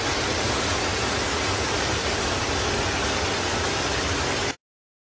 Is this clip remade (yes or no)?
no